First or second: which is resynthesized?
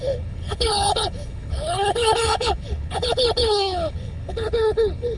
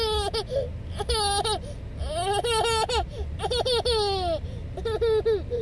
first